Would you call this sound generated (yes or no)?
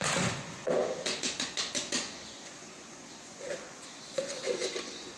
yes